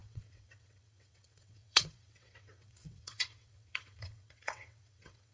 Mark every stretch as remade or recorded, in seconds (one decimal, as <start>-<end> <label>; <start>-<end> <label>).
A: 0.0-5.3 remade